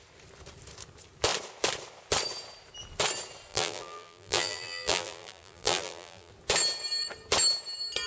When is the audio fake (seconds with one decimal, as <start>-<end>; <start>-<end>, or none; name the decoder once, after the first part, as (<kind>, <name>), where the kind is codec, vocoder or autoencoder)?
3.5-6.3 (vocoder, BigVGAN v2)